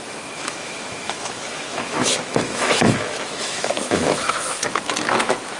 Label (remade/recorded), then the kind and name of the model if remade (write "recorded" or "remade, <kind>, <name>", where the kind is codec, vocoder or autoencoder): remade, autoencoder, DAC-VAE